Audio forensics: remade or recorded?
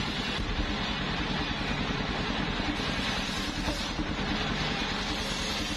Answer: remade